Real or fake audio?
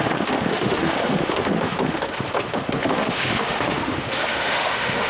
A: fake